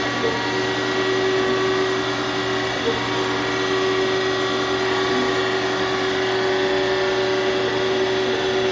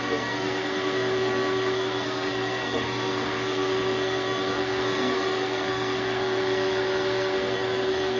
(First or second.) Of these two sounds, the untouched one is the first